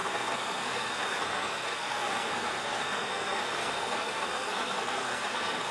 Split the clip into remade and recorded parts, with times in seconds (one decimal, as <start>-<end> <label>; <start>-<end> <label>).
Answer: 0.0-5.7 remade